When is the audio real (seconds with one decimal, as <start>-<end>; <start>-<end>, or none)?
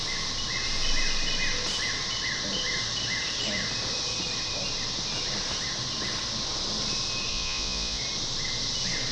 0.0-7.3; 8.0-9.1